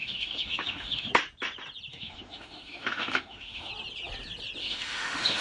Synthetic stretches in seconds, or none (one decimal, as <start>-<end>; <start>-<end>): 0.0-1.1; 1.9-3.7; 4.6-5.4